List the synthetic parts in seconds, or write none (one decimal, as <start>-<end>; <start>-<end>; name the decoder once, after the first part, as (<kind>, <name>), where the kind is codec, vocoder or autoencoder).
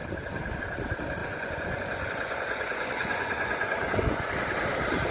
1.2-4.3 (vocoder, Vocos)